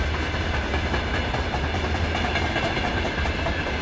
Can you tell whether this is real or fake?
real